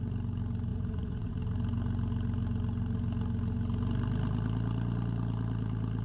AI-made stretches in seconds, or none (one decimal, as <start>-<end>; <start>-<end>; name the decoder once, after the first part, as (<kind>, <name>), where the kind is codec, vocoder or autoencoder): 0.7-1.3 (vocoder, Vocos)